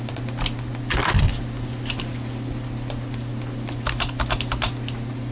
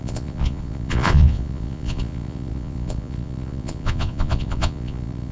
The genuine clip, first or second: first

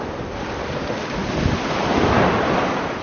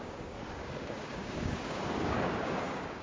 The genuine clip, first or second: first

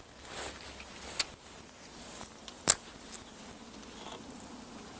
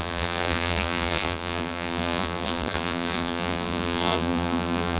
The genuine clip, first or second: first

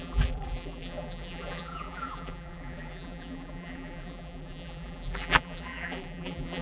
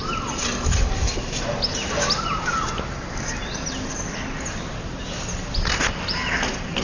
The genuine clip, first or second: second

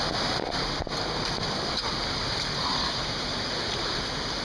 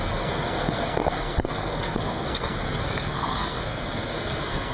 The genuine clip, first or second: first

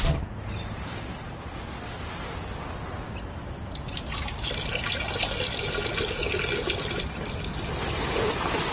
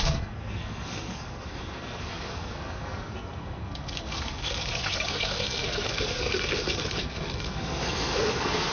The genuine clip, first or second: first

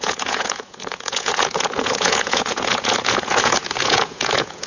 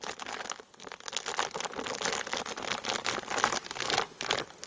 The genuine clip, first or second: second